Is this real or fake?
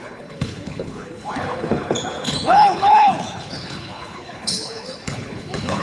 fake